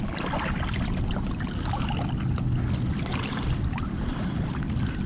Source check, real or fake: real